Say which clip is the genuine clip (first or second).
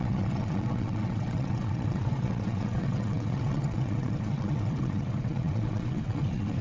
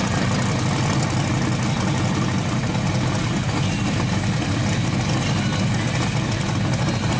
second